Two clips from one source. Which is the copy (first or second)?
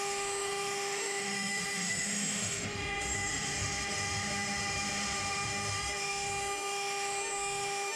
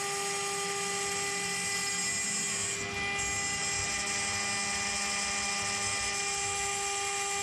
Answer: first